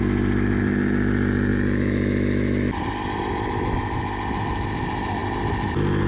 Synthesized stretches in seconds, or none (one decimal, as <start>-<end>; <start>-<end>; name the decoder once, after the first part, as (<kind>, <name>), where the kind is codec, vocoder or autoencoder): none